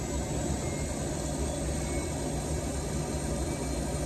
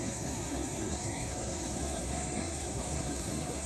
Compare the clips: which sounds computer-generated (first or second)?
second